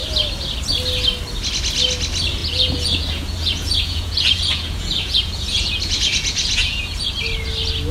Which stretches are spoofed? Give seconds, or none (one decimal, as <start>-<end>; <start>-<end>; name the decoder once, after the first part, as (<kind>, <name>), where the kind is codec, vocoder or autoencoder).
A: 2.4-7.1 (vocoder, Vocos)